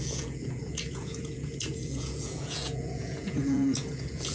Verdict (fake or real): fake